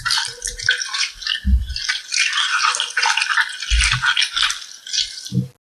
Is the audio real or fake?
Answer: real